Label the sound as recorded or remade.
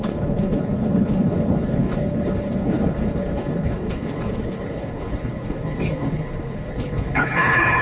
remade